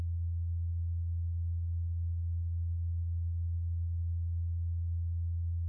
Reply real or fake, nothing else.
real